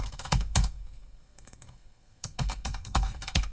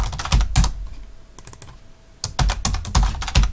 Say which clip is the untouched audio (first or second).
second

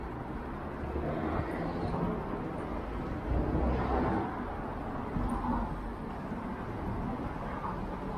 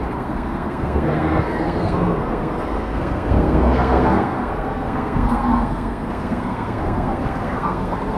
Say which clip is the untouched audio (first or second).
first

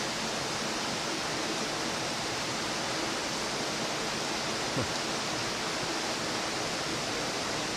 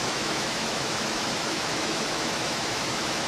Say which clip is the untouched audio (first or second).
first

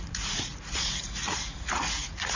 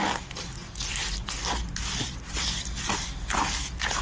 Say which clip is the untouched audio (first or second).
second